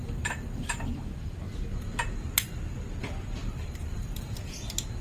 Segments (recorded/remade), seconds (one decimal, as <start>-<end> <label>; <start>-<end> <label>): 0.0-0.9 remade; 0.9-3.4 recorded; 3.4-4.5 remade; 4.5-5.0 recorded